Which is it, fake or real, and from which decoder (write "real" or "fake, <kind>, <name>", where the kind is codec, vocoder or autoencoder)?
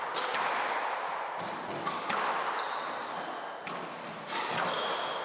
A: real